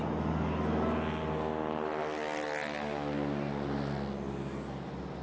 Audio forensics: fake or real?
real